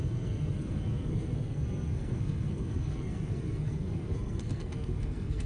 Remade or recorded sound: remade